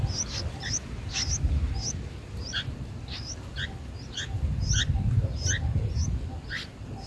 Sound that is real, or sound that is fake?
real